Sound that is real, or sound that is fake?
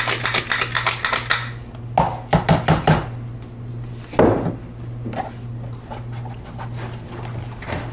real